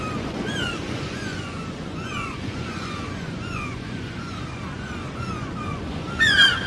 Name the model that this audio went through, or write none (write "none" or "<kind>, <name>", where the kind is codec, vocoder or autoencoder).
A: vocoder, Vocos